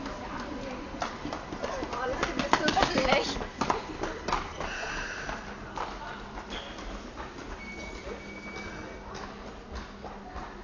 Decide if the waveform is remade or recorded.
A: recorded